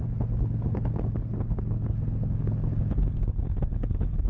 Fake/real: fake